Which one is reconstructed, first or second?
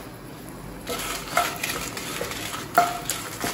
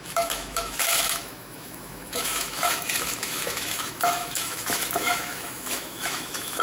second